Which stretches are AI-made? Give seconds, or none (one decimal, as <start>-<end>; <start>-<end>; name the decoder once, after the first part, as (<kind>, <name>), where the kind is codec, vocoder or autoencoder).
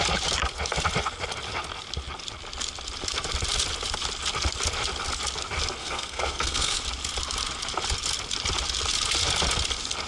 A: 5.8-6.8 (codec, SNAC)